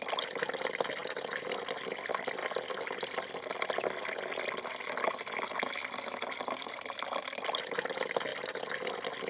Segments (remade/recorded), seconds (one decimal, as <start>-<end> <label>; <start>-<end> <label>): 0.0-1.0 recorded; 1.0-1.6 remade; 1.6-2.4 recorded; 2.4-3.3 remade; 3.3-8.3 recorded; 8.3-8.8 remade; 8.8-9.3 recorded